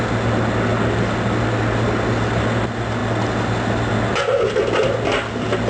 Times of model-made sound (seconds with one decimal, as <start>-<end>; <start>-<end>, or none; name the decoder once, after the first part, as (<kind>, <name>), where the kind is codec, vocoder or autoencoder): none